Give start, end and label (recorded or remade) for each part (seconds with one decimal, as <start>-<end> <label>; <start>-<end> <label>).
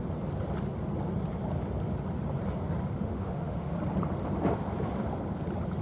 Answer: 0.0-3.0 recorded; 3.0-3.7 remade; 3.7-5.8 recorded